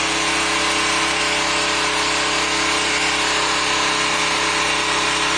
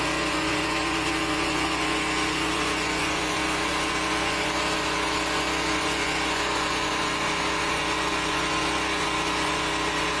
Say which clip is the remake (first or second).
second